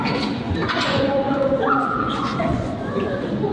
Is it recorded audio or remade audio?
remade